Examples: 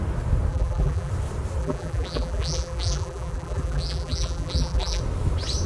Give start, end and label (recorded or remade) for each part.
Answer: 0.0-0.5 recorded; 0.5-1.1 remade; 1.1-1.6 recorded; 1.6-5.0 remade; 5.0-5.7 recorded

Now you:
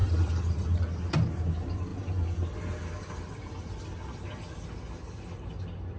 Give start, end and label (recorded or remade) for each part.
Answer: 0.0-0.8 remade; 0.8-6.0 recorded

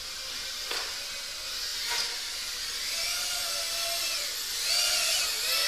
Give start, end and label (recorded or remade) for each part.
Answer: 0.0-5.7 recorded

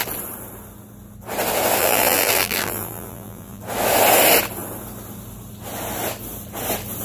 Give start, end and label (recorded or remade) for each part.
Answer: 0.0-1.8 recorded; 1.8-3.6 remade; 3.6-7.0 recorded

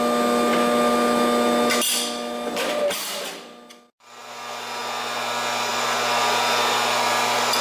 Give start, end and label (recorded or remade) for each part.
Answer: 0.0-7.6 recorded

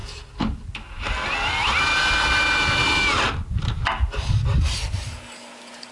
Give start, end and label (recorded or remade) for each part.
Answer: 0.0-5.9 recorded

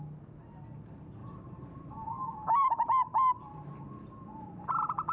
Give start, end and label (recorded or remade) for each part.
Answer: 0.0-1.2 recorded; 1.2-2.1 remade; 2.1-3.1 recorded; 3.1-3.9 remade; 3.9-5.1 recorded

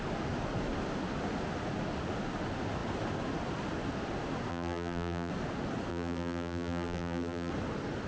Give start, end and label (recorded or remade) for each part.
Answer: 0.0-4.5 recorded; 4.5-5.3 remade; 5.3-5.9 recorded; 5.9-7.5 remade; 7.5-8.1 recorded